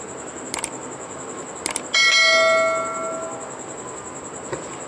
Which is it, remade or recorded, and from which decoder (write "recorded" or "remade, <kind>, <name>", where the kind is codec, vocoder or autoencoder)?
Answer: recorded